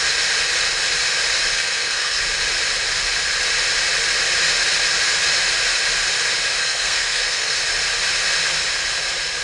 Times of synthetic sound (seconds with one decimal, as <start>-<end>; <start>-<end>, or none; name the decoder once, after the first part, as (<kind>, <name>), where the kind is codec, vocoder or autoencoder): 1.5-2.2 (codec, SNAC); 6.6-7.6

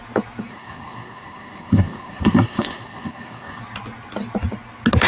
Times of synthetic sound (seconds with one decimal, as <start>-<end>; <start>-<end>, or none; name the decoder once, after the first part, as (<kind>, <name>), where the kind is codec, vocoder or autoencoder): 0.5-3.6 (codec, SNAC)

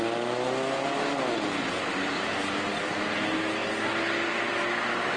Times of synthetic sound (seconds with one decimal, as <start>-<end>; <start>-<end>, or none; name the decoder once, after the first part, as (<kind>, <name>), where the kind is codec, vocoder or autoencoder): none

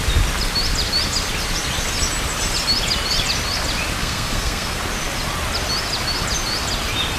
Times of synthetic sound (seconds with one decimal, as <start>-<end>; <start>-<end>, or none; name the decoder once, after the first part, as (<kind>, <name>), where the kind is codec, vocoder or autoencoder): 4.0-4.8 (codec, SNAC)

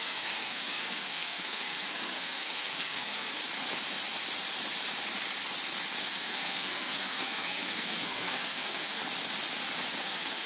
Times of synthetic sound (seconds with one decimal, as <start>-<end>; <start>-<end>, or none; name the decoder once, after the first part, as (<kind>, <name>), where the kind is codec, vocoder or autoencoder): 0.0-3.4 (codec, SNAC); 6.0-9.0; 10.0-10.5

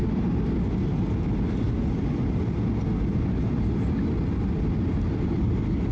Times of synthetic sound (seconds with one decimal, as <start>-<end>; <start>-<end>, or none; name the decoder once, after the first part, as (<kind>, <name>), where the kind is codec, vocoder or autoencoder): none